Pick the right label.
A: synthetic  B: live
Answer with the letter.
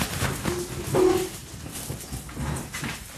B